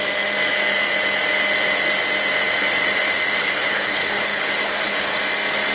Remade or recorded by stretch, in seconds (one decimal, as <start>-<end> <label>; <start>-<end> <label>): 0.0-3.4 recorded; 3.4-5.2 remade; 5.2-5.7 recorded